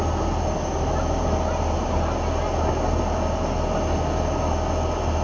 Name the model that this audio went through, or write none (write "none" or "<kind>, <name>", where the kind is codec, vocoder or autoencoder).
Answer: none